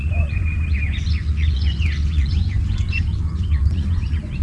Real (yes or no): no